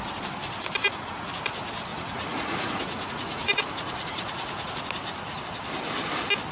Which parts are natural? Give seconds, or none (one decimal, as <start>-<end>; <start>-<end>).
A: 0.0-0.8; 1.3-1.9; 4.8-6.5